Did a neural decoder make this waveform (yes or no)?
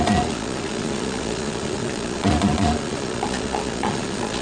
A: yes